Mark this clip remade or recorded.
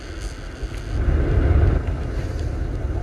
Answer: recorded